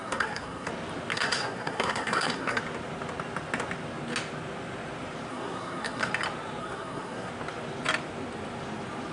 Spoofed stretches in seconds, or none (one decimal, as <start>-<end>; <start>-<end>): 0.0-0.7; 1.1-2.6; 5.3-6.1; 6.6-7.3